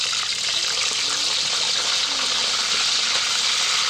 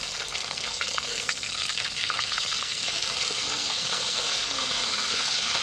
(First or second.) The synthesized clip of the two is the second